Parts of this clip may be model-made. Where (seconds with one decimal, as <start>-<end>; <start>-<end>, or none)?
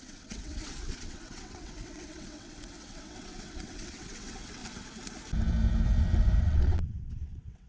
0.0-4.6; 6.4-7.7